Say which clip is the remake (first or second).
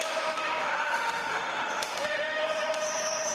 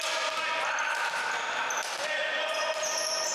first